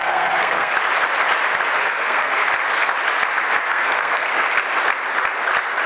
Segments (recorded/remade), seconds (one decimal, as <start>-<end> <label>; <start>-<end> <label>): 0.0-0.7 remade; 0.7-1.8 recorded; 1.8-2.4 remade; 2.4-3.6 recorded; 3.6-4.3 remade; 4.3-5.9 recorded